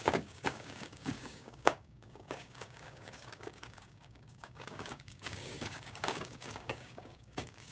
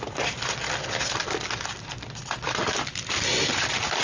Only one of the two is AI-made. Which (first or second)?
first